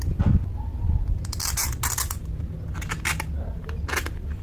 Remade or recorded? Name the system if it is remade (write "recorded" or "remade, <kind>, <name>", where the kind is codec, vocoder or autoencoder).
recorded